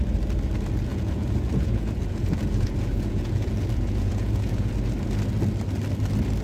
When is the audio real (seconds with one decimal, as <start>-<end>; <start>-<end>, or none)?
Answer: 0.0-0.9; 4.7-6.4